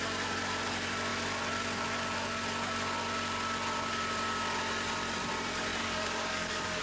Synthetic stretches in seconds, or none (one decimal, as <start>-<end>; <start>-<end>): 5.8-6.8